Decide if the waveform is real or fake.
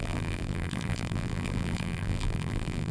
fake